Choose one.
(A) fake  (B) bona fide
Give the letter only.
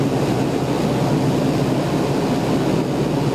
B